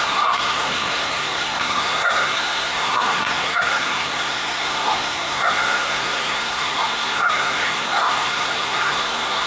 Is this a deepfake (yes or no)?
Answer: yes